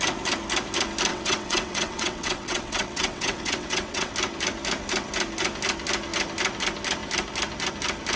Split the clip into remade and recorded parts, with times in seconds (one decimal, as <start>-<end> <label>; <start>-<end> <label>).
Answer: 0.0-1.1 recorded; 1.1-4.1 remade; 4.1-8.2 recorded